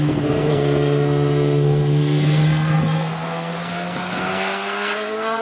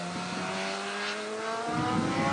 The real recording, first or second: second